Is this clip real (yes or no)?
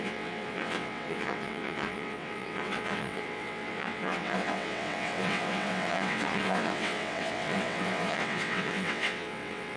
no